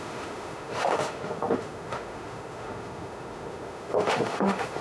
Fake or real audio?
fake